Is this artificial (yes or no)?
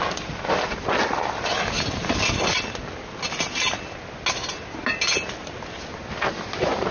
no